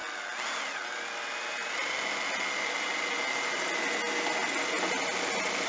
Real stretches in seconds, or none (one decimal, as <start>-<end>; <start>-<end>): 0.0-5.7